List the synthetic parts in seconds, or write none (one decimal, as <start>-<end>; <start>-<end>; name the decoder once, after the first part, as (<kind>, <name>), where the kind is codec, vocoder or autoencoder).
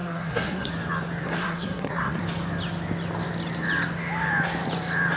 0.0-0.7 (codec, SNAC); 1.2-2.2